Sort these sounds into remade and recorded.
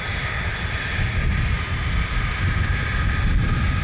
recorded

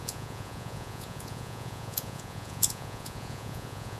remade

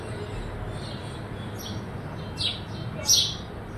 recorded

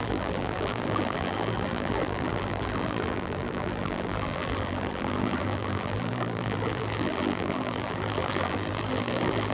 remade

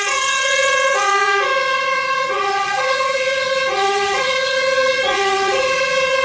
remade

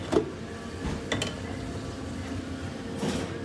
recorded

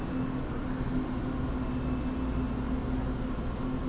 recorded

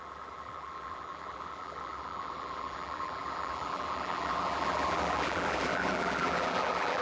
remade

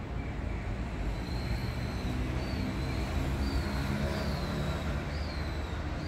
recorded